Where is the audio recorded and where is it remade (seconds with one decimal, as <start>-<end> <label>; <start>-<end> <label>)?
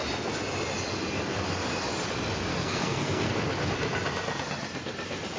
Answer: 0.0-2.5 recorded; 2.5-3.3 remade; 3.3-5.4 recorded